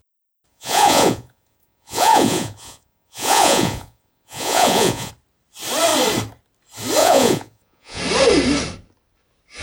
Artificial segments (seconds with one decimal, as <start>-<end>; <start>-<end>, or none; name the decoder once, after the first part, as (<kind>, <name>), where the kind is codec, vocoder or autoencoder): 0.5-5.1 (vocoder, Vocos); 7.0-8.0